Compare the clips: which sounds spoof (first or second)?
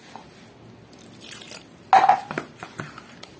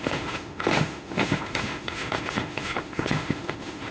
second